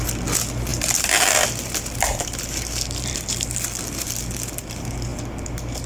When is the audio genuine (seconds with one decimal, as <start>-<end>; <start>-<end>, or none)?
0.0-0.7; 4.2-5.9